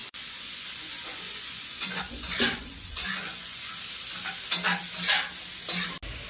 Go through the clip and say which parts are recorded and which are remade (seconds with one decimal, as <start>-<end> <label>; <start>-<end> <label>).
0.0-3.8 remade; 3.8-6.3 recorded